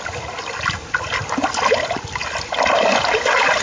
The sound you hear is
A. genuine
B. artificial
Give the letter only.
A